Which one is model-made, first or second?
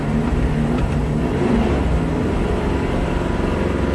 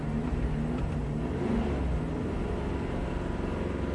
first